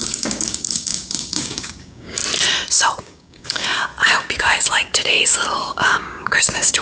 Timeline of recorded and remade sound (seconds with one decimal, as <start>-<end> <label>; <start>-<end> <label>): 0.0-2.2 remade; 2.2-3.0 recorded; 3.0-3.9 remade; 3.9-4.4 recorded; 4.4-6.8 remade